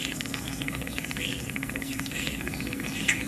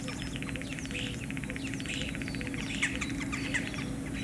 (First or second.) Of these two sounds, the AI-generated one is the first